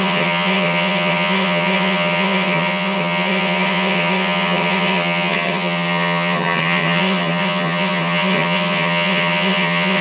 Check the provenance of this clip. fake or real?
fake